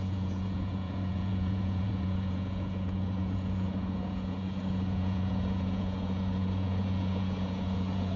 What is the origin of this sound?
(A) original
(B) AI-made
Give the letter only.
B